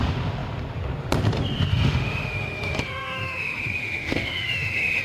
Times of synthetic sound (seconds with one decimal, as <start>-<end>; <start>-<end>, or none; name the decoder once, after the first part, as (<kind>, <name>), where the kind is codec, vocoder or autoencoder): 1.7-5.0 (autoencoder, DAC-VAE)

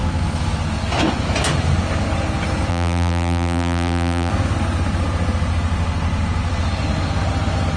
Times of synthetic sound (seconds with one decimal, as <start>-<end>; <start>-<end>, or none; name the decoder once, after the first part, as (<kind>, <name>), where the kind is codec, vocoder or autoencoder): 2.7-4.3 (vocoder, BigVGAN v2)

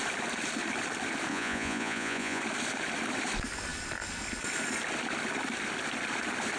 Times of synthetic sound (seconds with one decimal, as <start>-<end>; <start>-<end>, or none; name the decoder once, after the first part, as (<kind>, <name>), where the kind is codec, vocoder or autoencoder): 1.3-2.4 (vocoder, Vocos)

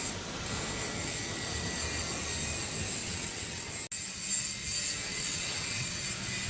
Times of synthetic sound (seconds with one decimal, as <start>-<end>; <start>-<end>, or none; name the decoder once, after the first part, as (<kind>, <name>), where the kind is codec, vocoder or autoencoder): 3.0-3.7 (vocoder, WaveNeXt); 5.1-6.0

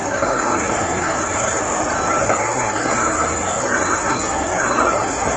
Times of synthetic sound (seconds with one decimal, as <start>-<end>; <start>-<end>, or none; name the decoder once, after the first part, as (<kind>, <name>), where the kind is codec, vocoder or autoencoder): 0.0-1.6 (codec, SNAC); 2.2-5.4

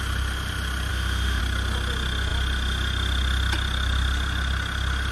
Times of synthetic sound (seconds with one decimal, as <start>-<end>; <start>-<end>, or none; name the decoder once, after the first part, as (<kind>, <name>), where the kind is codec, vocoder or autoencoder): 0.9-1.4 (autoencoder, DAC-VAE)

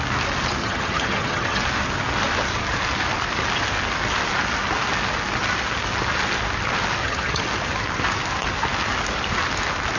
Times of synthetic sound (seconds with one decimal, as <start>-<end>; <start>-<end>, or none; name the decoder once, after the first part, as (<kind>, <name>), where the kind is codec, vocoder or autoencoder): 0.6-1.6 (vocoder, HiFi-GAN); 7.0-7.5